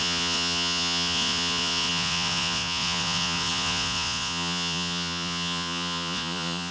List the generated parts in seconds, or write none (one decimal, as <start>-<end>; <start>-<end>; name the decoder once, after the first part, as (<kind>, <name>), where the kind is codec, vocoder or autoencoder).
0.0-6.7 (vocoder, Vocos)